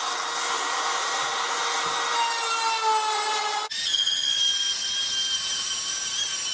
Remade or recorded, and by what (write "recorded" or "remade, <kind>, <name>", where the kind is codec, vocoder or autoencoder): recorded